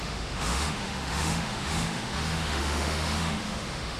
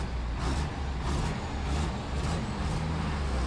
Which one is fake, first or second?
first